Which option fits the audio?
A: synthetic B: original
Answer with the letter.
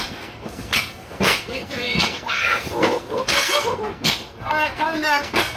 A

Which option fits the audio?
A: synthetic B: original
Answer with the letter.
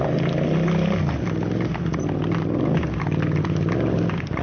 B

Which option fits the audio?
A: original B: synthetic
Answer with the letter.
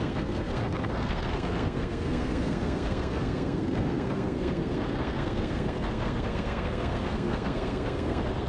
B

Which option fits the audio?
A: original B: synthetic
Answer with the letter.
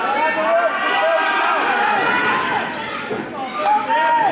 A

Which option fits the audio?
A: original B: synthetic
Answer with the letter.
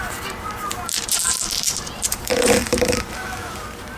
B